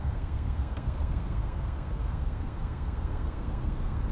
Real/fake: fake